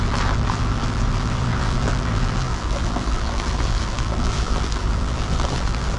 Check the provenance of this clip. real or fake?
fake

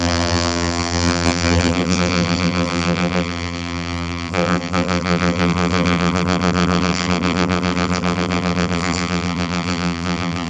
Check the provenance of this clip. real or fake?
fake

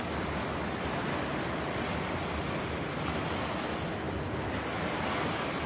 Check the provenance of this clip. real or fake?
real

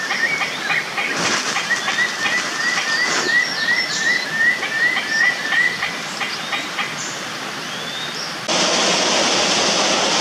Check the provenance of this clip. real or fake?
real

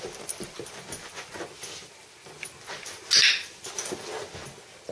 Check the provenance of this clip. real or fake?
real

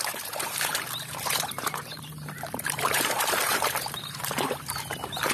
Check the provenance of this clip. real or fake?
fake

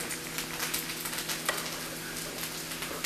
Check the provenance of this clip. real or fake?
real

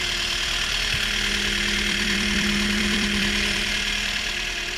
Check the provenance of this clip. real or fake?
fake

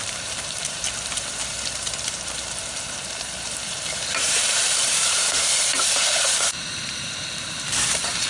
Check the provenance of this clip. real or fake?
fake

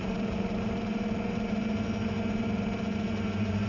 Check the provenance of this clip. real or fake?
fake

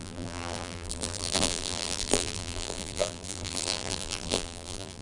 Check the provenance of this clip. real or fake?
fake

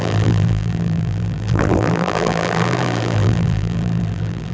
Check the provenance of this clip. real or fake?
fake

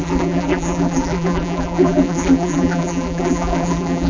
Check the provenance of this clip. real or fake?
fake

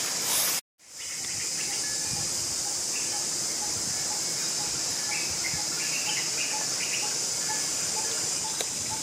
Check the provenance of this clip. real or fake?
real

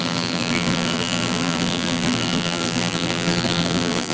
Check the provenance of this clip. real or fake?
fake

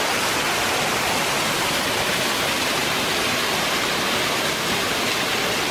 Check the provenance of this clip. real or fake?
fake